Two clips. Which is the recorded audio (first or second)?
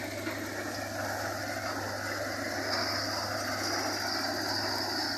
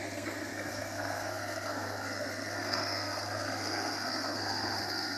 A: first